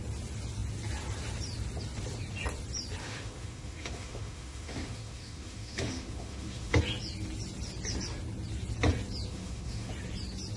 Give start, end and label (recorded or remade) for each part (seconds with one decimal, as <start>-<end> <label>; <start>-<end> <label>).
0.0-3.0 recorded; 3.0-6.8 remade; 6.8-9.3 recorded; 9.3-9.9 remade; 9.9-10.6 recorded